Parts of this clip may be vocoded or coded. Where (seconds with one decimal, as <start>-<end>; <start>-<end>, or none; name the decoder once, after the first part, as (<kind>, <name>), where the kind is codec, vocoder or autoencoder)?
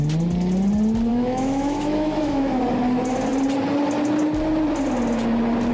1.1-2.6 (autoencoder, DAC-VAE)